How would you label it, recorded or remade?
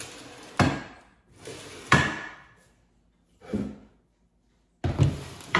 recorded